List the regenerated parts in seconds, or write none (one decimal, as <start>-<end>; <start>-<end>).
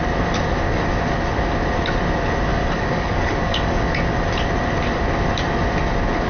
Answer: 2.5-3.9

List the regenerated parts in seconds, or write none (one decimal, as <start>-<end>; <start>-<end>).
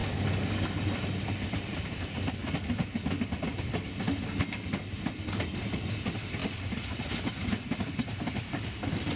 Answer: 1.7-2.4; 5.9-9.2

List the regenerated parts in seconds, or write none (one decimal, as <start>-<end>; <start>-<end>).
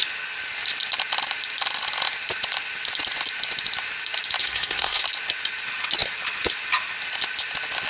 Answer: 4.4-5.0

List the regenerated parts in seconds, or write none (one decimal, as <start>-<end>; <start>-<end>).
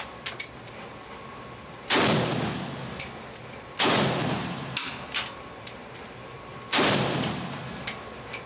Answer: 0.0-2.0; 3.5-8.5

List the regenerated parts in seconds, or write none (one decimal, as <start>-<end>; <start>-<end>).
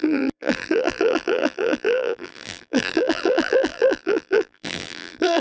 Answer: 0.0-5.4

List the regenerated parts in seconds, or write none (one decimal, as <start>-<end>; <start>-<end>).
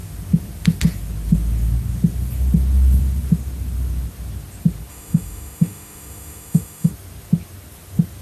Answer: 4.9-6.9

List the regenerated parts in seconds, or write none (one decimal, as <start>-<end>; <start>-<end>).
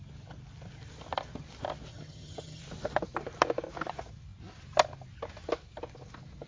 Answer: 1.9-2.6